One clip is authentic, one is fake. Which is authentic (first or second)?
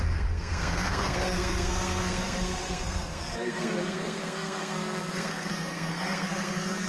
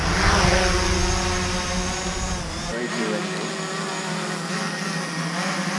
second